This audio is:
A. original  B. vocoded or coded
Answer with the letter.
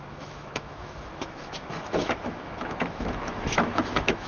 B